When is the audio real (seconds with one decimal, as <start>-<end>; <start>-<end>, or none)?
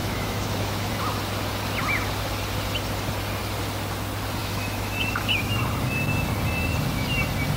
0.9-4.4; 5.6-7.6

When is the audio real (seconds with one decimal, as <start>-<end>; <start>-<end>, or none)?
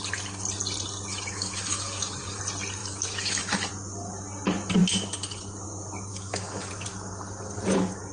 0.0-1.1; 2.4-2.8; 3.7-6.1; 6.7-8.1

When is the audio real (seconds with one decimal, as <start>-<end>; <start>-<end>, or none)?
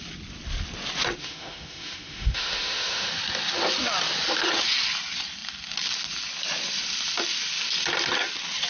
0.0-1.2; 3.1-8.7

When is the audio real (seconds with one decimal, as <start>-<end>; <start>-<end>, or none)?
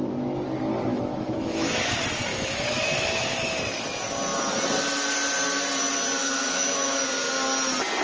0.0-0.9; 1.8-2.3; 3.6-6.2; 7.0-8.0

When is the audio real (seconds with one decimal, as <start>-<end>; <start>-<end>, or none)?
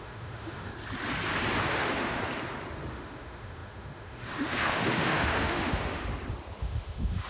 0.7-1.7; 2.2-2.9; 6.1-6.6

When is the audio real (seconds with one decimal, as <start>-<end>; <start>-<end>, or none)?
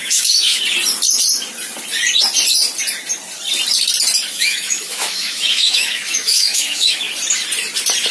0.6-4.3; 7.1-8.1